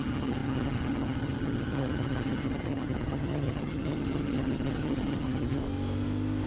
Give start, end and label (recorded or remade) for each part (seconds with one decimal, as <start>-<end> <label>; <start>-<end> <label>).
0.0-5.6 remade; 5.6-6.5 recorded